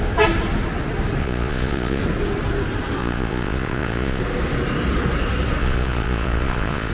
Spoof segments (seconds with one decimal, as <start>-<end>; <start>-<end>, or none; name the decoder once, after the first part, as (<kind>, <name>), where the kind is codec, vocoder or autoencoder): 1.2-2.0 (vocoder, Vocos); 3.0-4.2; 5.6-6.9